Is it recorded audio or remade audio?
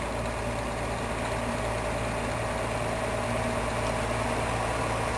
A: recorded